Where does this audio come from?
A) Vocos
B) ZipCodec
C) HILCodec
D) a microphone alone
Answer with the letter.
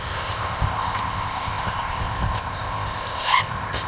B